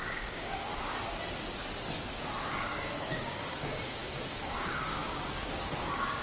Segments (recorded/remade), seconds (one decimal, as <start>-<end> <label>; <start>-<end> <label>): 0.0-0.7 remade; 0.7-2.5 recorded; 2.5-6.2 remade